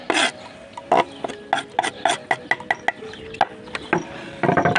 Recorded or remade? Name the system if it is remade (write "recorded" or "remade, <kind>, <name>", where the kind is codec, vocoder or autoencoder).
recorded